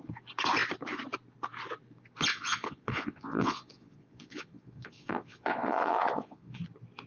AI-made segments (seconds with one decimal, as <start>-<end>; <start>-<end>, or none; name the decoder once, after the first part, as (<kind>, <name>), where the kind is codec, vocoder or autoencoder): 2.3-6.6 (vocoder, Vocos)